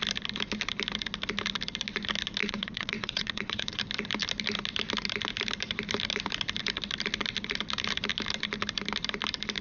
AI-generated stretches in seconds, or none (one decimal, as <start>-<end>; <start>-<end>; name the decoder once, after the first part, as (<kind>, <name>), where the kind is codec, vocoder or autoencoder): 2.4-3.8 (vocoder, WaveNeXt)